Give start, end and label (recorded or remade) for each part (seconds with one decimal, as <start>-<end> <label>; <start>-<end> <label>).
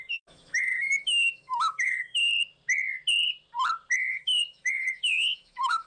0.0-2.3 remade; 2.3-4.1 recorded; 4.1-5.9 remade